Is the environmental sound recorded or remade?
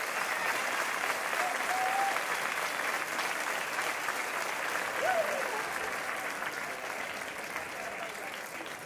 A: recorded